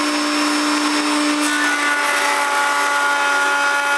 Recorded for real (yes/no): yes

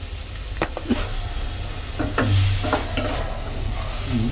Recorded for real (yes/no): yes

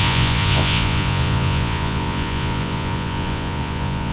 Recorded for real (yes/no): no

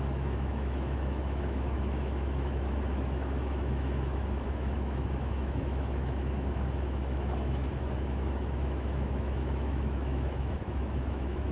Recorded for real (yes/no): no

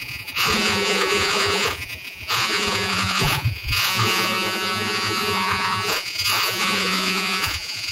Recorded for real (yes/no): no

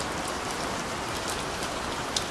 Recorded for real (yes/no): yes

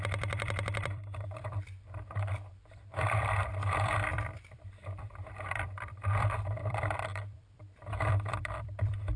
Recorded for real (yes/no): no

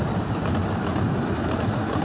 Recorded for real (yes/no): yes